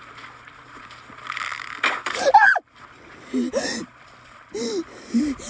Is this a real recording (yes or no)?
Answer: no